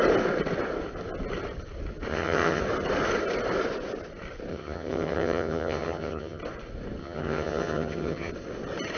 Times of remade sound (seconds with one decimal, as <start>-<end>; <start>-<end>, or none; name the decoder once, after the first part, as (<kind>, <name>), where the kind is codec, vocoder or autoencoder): 2.1-2.6 (vocoder, HiFi-GAN); 4.5-6.4; 7.0-8.3